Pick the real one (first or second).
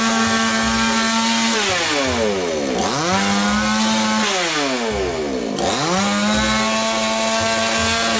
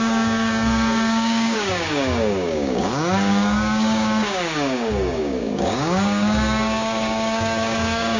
first